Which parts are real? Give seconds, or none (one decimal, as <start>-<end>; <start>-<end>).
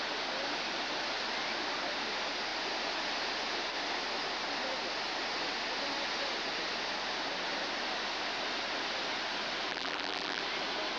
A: 0.0-9.7; 10.4-11.0